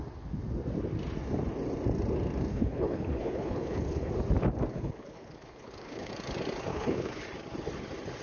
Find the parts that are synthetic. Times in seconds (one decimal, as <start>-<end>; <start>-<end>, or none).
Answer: 2.5-4.1; 4.7-6.1; 6.7-7.2